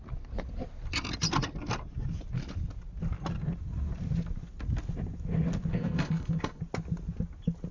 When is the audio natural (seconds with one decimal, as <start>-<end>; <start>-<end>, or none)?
0.0-5.7; 6.6-7.7